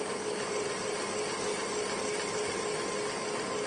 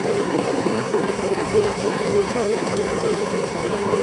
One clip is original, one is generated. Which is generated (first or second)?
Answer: second